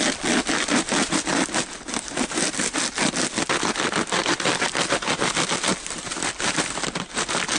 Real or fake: real